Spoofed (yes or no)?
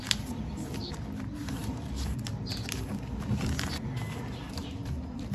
no